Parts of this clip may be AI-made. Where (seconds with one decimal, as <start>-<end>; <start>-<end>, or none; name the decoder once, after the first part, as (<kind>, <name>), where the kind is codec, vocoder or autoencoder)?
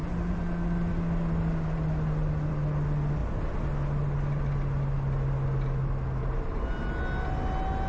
none